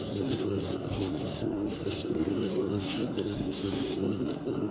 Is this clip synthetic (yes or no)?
yes